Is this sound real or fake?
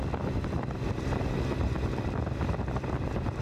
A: real